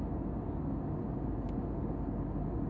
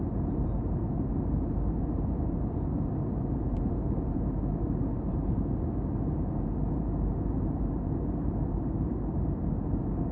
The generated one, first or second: second